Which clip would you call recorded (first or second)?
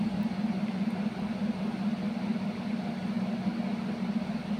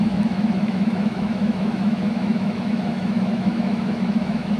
first